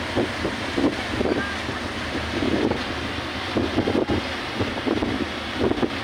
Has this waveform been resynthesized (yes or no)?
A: no